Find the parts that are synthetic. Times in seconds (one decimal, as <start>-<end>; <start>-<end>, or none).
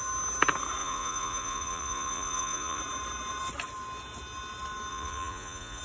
0.8-2.8; 4.9-5.8